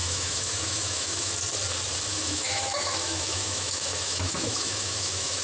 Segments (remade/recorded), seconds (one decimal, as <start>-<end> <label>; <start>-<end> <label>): 0.0-1.3 remade; 1.3-2.1 recorded; 2.1-5.4 remade